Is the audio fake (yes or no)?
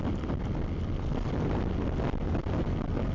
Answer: no